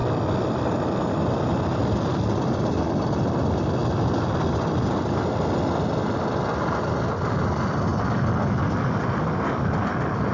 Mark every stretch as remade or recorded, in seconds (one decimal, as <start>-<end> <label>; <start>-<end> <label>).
0.0-10.3 recorded